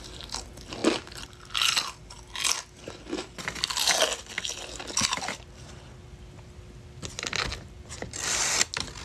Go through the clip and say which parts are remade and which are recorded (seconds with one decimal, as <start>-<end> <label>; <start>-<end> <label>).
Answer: 0.0-9.0 recorded